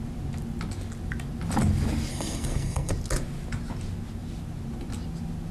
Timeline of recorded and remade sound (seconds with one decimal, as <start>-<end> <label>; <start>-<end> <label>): 0.0-2.1 recorded; 2.1-2.9 remade; 2.9-5.5 recorded